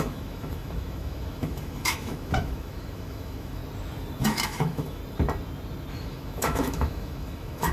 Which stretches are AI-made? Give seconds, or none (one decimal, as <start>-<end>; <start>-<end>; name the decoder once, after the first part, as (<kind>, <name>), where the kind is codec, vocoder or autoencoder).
0.0-3.6 (autoencoder, DAC-VAE); 4.2-5.0; 5.9-7.7